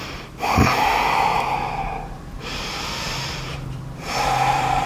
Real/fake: fake